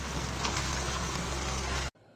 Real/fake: fake